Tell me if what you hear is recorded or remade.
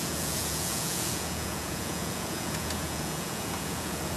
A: remade